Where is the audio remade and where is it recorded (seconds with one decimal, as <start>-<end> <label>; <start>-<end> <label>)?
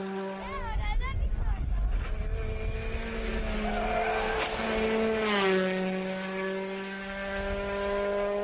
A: 0.0-8.4 recorded